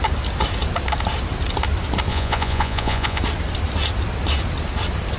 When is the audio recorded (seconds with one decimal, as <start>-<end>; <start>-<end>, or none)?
0.0-2.1; 3.2-5.2